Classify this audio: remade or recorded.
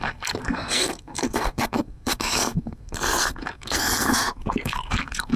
remade